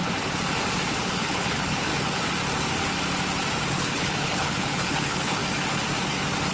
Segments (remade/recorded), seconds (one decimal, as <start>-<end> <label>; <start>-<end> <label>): 0.0-1.0 recorded; 1.0-1.9 remade; 1.9-3.7 recorded; 3.7-5.4 remade; 5.4-6.5 recorded

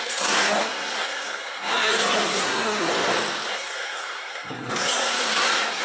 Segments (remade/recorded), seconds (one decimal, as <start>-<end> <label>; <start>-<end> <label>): 0.0-2.9 remade; 2.9-3.5 recorded; 3.5-5.8 remade

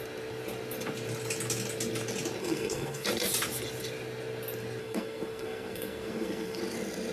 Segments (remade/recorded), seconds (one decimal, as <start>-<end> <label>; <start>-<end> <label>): 0.0-2.4 recorded; 2.4-3.1 remade; 3.1-4.8 recorded; 4.8-6.6 remade; 6.6-7.1 recorded

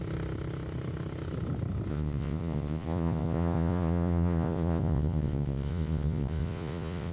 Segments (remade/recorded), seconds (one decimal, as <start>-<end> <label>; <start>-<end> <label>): 0.0-1.9 recorded; 1.9-7.1 remade

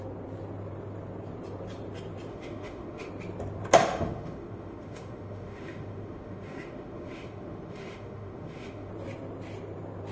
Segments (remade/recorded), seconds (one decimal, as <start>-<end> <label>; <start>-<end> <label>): 0.0-2.3 recorded; 2.3-3.1 remade; 3.1-3.8 recorded; 3.8-8.9 remade; 8.9-10.1 recorded

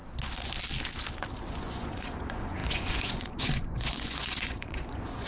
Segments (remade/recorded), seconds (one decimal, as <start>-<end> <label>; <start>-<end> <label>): 0.0-1.5 recorded; 1.5-5.3 remade